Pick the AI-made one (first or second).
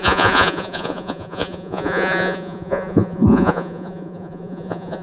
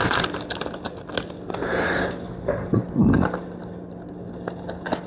first